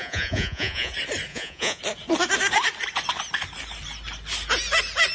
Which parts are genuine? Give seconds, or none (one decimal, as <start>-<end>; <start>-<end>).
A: 0.9-1.3; 1.8-5.1